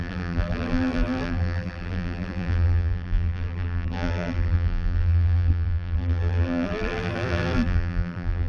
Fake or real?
fake